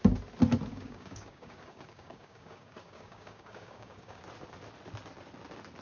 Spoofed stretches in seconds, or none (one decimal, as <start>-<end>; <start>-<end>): 0.7-4.2